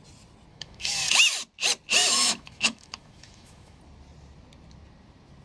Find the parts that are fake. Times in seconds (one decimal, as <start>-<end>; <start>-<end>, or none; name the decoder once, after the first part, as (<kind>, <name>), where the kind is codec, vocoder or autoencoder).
0.5-1.4 (autoencoder, DAC-VAE); 2.0-3.8